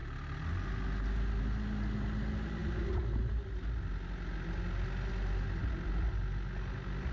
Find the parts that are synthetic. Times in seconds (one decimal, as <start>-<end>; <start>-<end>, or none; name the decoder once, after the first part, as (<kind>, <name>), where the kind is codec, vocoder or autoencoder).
none